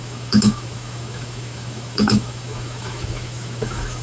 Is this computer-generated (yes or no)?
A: yes